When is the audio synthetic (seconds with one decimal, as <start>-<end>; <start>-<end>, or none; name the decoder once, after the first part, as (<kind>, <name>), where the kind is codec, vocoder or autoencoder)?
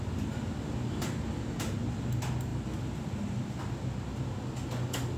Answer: none